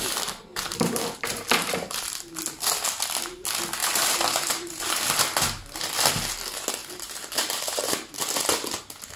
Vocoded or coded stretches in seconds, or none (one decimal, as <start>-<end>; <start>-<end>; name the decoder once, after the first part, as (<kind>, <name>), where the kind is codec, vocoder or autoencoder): 0.5-2.1 (vocoder, BigVGAN v2); 3.8-5.2; 6.8-8.1